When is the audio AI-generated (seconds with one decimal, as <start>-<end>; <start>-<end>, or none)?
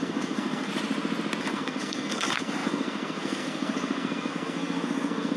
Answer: 0.0-0.7; 1.4-5.4